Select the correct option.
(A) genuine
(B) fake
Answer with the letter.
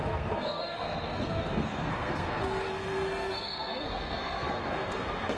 B